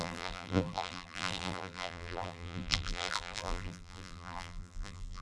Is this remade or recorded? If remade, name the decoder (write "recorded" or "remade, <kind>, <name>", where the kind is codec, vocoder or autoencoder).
remade, vocoder, BigVGAN v2